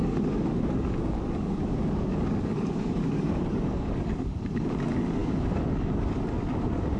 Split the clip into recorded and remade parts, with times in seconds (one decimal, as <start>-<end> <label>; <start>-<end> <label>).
0.0-7.0 remade